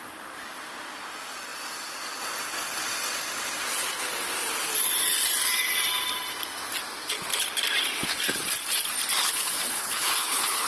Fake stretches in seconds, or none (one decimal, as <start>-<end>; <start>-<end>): 9.2-10.7